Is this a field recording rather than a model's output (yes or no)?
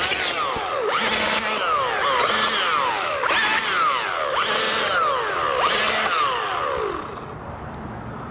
yes